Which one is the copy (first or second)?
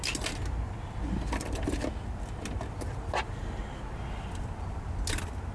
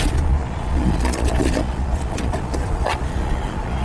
second